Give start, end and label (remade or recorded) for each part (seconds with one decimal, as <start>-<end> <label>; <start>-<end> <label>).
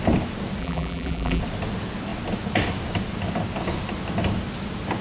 0.0-0.6 recorded; 0.6-1.4 remade; 1.4-5.0 recorded